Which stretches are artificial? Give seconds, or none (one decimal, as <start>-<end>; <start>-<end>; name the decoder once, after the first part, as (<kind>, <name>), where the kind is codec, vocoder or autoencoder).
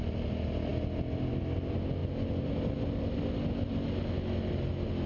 none